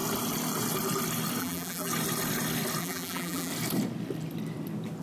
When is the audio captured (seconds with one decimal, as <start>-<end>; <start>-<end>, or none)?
0.0-1.4; 1.9-2.8; 3.5-5.0